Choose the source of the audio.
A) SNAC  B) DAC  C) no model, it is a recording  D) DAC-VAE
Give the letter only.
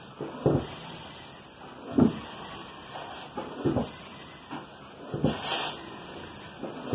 C